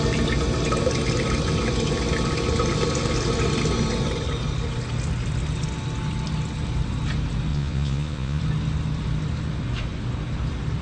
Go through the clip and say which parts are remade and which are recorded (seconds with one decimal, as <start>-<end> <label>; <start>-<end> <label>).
0.0-7.5 recorded; 7.5-8.4 remade; 8.4-10.8 recorded